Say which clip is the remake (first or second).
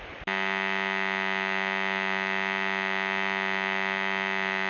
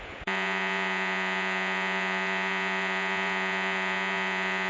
second